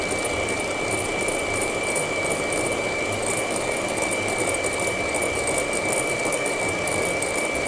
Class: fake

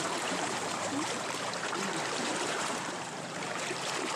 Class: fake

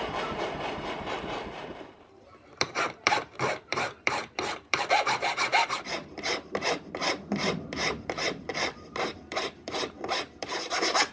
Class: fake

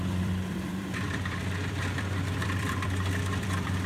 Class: fake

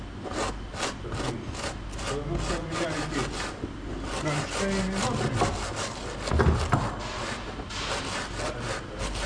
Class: real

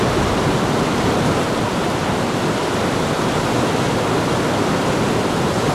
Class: fake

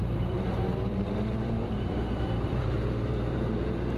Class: fake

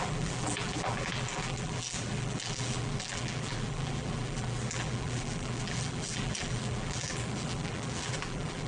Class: fake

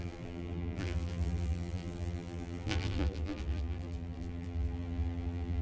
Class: fake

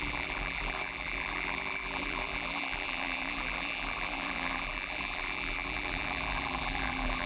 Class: fake